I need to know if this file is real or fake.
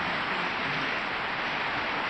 real